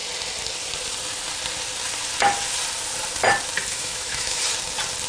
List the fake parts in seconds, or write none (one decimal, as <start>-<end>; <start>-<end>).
3.7-4.4